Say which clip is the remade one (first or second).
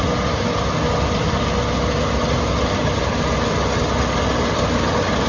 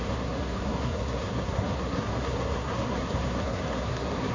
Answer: second